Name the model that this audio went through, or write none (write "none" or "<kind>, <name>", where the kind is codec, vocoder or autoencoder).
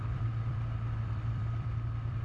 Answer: vocoder, BigVGAN v2